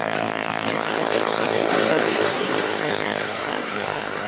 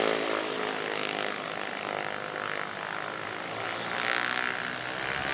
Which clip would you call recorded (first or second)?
second